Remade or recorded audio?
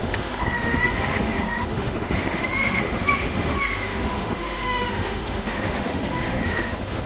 remade